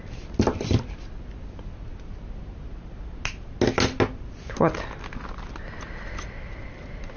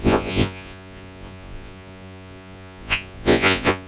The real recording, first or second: first